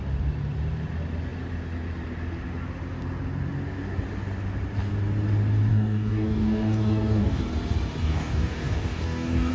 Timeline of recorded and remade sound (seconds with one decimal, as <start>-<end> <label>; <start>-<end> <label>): 0.0-5.7 recorded; 5.7-7.4 remade; 7.4-8.0 recorded; 8.0-9.5 remade